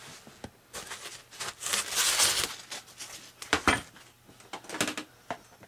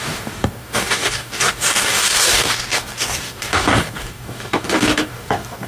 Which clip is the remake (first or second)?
second